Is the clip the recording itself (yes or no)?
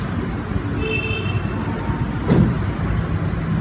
yes